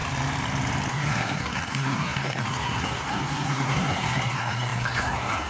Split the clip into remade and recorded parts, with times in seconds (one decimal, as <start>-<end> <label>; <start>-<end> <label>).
0.0-0.9 recorded; 0.9-5.5 remade